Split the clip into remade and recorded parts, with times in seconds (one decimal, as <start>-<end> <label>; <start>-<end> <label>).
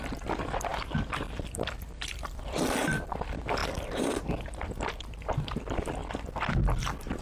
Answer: 0.0-3.6 remade; 3.6-4.2 recorded; 4.2-6.0 remade; 6.0-7.2 recorded